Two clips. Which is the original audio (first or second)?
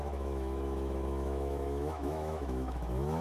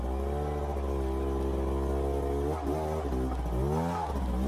second